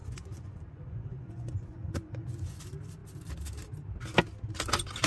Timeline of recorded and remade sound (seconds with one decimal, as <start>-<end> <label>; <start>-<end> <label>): 0.0-2.6 remade; 2.6-5.1 recorded